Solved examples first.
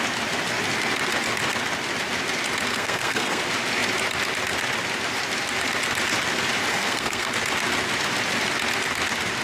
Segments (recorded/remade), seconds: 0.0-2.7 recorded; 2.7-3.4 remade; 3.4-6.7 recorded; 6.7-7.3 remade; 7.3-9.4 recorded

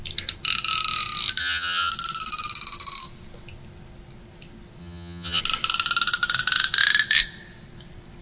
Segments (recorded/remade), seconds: 0.0-1.4 recorded; 1.4-1.9 remade; 1.9-4.8 recorded; 4.8-5.4 remade; 5.4-8.2 recorded

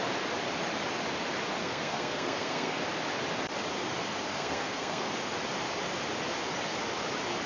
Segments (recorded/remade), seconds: 0.0-1.6 recorded; 1.6-2.8 remade; 2.8-4.3 recorded; 4.3-5.1 remade; 5.1-7.5 recorded

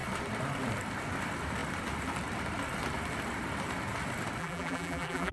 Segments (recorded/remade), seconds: 0.0-4.4 recorded; 4.4-5.3 remade

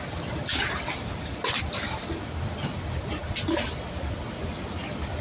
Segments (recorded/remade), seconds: 0.0-5.2 recorded